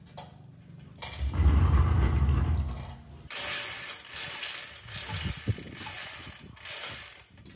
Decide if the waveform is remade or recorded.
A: recorded